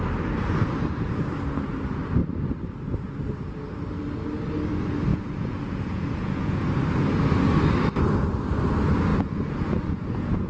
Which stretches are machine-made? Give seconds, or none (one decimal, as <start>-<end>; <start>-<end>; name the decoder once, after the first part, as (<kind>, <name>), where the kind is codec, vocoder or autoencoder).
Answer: 5.1-6.7 (vocoder, Vocos); 9.1-10.5